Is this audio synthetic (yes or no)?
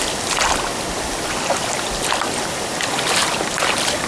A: no